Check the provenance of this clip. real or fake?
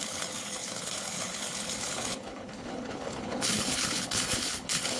fake